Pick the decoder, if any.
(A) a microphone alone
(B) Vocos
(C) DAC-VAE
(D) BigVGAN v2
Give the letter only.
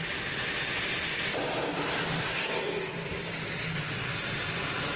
A